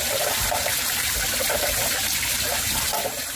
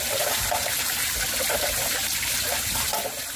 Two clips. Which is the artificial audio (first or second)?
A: first